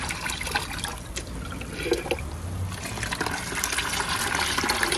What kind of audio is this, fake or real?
real